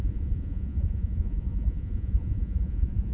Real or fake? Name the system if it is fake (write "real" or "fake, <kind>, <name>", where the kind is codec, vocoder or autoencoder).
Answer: fake, vocoder, Vocos